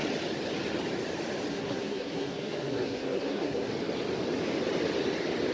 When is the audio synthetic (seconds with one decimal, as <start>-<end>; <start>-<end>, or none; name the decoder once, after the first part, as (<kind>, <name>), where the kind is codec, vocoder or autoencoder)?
1.5-3.7 (codec, SNAC)